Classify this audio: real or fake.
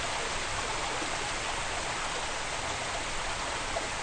real